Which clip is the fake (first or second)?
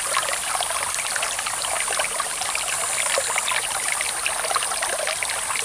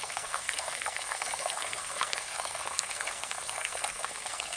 second